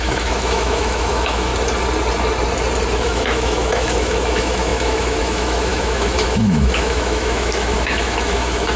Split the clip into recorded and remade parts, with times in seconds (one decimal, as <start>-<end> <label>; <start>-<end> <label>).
0.0-1.5 remade; 1.5-2.9 recorded; 2.9-8.8 remade